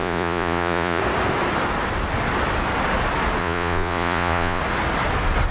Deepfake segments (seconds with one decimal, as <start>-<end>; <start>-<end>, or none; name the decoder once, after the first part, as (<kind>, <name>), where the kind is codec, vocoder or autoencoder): 0.0-1.0 (vocoder, Vocos); 3.4-4.6